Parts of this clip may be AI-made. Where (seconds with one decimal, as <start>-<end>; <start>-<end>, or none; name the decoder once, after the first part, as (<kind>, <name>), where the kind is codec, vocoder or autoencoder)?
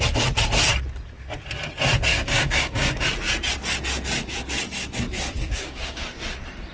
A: 2.1-3.1 (codec, DAC); 5.4-6.2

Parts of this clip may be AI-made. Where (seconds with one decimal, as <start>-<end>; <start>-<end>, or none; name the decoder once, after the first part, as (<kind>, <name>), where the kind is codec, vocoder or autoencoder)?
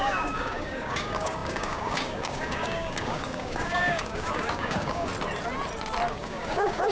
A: 0.0-5.1 (codec, DAC); 6.1-6.9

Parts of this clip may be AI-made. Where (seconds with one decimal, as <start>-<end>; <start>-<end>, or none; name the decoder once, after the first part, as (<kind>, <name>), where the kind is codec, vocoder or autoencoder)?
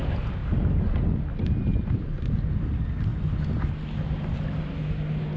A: none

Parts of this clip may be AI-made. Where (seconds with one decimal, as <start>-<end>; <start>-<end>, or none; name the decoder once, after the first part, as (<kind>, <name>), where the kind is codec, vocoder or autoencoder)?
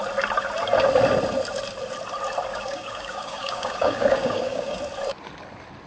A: 2.5-4.8 (codec, DAC)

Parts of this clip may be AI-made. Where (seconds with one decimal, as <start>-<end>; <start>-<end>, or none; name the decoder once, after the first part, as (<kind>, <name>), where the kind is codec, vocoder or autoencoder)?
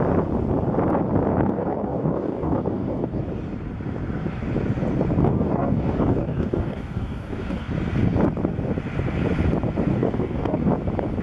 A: 1.3-3.2 (codec, DAC); 5.2-7.7; 9.9-10.7